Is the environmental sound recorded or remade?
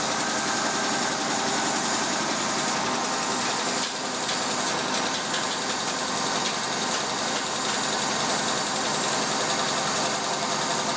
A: recorded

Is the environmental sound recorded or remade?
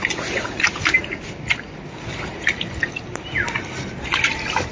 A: recorded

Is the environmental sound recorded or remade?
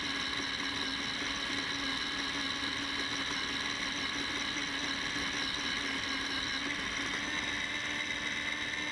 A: recorded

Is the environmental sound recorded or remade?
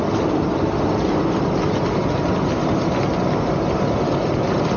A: recorded